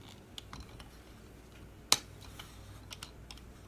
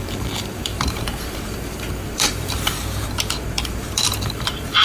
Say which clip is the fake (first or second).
second